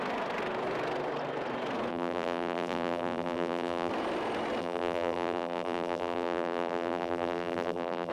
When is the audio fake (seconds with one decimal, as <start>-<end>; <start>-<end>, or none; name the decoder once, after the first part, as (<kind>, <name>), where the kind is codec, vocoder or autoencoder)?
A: 1.9-3.9 (vocoder, BigVGAN v2); 4.6-8.1